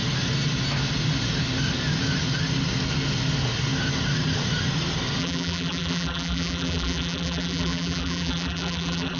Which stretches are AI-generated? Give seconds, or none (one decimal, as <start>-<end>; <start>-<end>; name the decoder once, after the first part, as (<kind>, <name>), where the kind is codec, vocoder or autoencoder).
5.2-9.2 (vocoder, BigVGAN v2)